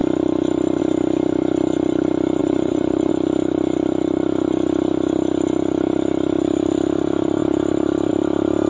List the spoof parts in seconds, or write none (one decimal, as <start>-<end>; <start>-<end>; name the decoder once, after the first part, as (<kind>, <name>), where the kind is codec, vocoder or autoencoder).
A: 2.4-3.1 (vocoder, Vocos)